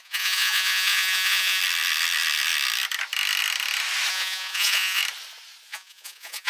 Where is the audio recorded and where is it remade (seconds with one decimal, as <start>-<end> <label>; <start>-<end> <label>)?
0.0-1.6 remade; 1.6-4.1 recorded; 4.1-5.0 remade; 5.0-5.7 recorded; 5.7-6.5 remade